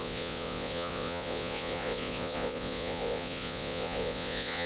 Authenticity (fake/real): fake